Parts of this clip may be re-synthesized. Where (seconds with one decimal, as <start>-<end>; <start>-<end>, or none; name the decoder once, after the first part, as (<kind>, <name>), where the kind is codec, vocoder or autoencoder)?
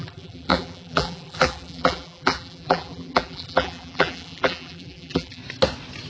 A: 0.0-5.4 (vocoder, BigVGAN v2)